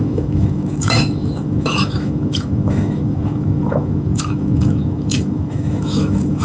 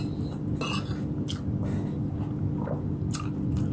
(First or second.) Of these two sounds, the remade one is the first